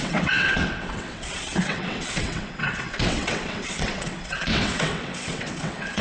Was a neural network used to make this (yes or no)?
yes